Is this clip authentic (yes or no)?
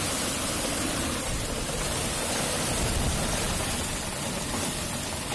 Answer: yes